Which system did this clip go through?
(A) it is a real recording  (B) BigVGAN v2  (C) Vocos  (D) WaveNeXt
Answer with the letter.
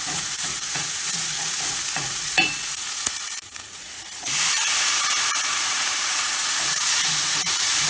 C